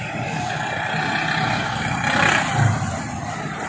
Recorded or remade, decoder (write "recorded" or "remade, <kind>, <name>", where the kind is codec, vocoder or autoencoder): recorded